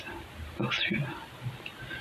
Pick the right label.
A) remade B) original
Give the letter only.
B